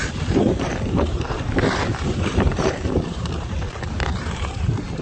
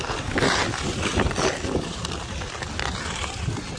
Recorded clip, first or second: second